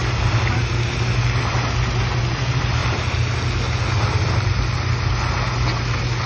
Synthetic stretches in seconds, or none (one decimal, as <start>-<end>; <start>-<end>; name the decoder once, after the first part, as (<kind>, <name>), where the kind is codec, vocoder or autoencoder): none